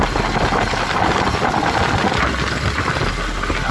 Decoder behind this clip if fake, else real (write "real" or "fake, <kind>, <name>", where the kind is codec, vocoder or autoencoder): real